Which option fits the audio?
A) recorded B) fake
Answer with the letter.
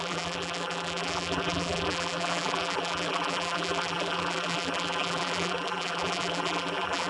B